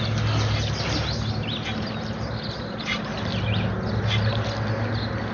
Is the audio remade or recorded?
recorded